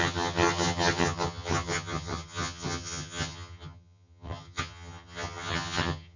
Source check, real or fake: fake